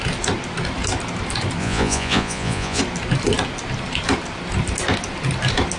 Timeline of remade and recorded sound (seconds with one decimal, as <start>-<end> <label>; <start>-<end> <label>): 0.0-1.6 recorded; 1.6-2.8 remade; 2.8-5.8 recorded